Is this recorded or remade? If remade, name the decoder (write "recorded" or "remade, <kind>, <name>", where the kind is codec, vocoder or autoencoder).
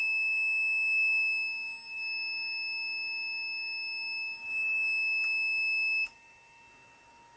recorded